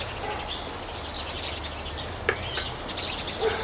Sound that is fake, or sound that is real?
real